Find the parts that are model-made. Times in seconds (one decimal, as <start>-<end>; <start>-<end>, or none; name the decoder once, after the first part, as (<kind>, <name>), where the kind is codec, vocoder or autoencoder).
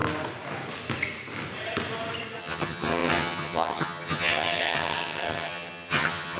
2.4-6.4 (vocoder, HiFi-GAN)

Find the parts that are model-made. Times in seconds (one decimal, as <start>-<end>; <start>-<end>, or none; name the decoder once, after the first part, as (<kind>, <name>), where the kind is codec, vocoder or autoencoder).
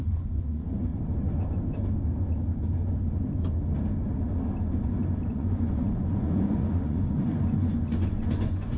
0.0-0.9 (vocoder, Vocos); 5.3-8.8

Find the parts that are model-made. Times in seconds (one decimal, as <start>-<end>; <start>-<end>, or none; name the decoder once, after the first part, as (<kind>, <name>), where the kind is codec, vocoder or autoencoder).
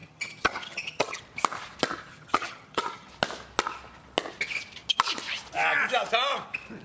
0.0-1.2 (vocoder, HiFi-GAN); 2.1-3.1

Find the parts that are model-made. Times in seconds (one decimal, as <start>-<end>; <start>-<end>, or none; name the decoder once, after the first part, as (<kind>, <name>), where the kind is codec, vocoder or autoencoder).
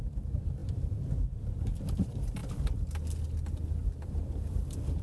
3.8-5.0 (vocoder, BigVGAN v2)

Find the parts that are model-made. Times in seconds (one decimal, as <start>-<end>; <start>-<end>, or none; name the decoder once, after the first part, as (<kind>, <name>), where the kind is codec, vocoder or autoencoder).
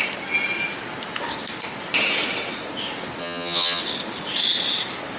3.2-3.8 (vocoder, HiFi-GAN)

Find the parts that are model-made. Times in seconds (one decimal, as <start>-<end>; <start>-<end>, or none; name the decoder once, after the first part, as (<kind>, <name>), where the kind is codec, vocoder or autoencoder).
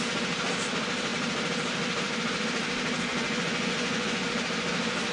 3.1-4.3 (vocoder, Vocos)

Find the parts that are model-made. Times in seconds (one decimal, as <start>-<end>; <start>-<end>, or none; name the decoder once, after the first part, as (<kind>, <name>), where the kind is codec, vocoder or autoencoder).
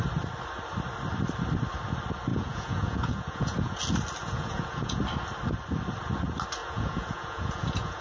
2.3-3.8 (vocoder, Vocos); 4.2-5.0; 6.6-8.0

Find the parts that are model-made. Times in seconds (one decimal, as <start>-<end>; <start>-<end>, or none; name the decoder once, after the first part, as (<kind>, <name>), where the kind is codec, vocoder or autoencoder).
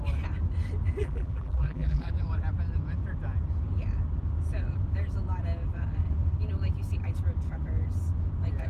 1.0-2.1 (vocoder, BigVGAN v2)